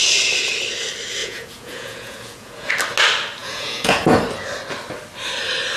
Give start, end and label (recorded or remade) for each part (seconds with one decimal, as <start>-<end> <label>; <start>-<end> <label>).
0.0-1.2 recorded; 1.2-2.7 remade; 2.7-3.4 recorded; 3.4-4.2 remade; 4.2-5.8 recorded